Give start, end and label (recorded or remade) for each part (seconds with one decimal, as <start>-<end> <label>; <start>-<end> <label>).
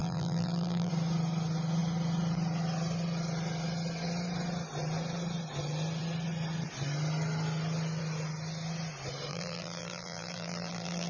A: 0.0-0.9 remade; 0.9-9.3 recorded; 9.3-11.1 remade